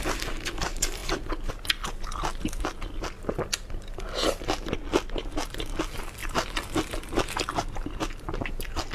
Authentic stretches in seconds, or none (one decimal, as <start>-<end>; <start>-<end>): 0.0-8.9